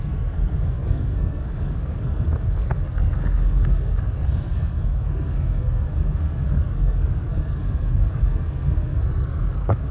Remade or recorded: remade